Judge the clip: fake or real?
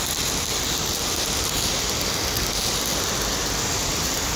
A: real